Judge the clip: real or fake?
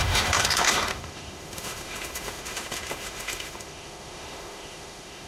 fake